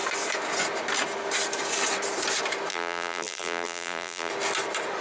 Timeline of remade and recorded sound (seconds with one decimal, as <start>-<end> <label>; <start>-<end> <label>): 0.0-2.7 recorded; 2.7-4.3 remade; 4.3-5.0 recorded